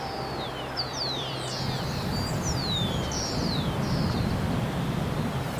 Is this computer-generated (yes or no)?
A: yes